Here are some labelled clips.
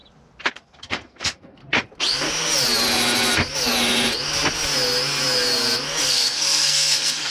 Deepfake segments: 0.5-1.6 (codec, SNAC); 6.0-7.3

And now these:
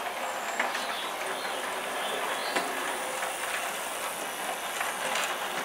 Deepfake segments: none